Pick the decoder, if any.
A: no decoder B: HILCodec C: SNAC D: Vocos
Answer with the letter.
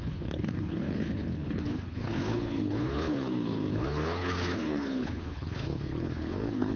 B